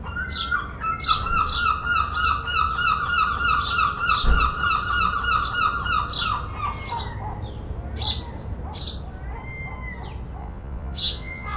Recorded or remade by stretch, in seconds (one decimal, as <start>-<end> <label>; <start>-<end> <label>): 0.0-10.4 recorded; 10.4-11.6 remade